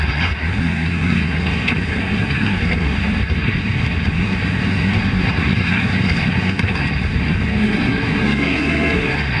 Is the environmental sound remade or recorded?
remade